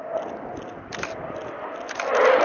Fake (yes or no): no